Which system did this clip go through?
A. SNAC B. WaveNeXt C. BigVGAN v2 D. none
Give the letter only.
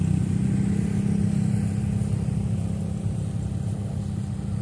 D